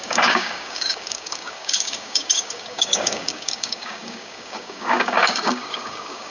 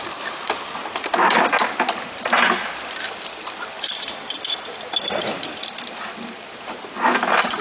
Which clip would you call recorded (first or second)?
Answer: second